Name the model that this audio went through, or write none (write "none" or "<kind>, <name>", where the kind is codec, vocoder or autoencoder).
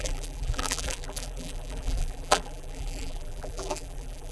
vocoder, BigVGAN v2